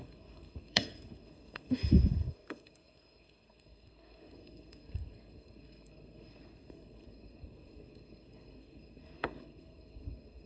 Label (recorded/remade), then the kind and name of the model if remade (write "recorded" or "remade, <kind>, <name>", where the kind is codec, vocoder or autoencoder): remade, codec, SNAC